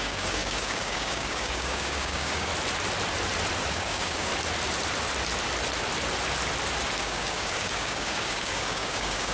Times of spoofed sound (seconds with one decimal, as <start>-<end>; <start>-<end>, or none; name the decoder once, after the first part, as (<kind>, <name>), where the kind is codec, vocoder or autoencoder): 0.0-2.5 (codec, DAC); 3.7-4.3; 7.0-9.3